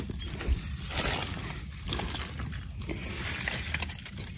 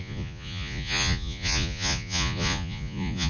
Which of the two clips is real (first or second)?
first